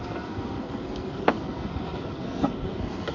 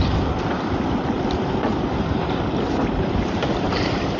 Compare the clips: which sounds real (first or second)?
second